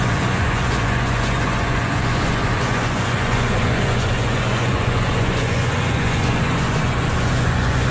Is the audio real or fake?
fake